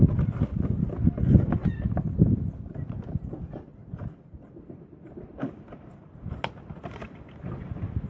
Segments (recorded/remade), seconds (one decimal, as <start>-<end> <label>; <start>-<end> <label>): 0.0-1.6 recorded; 1.6-2.2 remade; 2.2-8.1 recorded